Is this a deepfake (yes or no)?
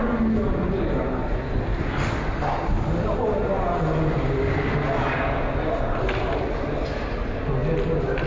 no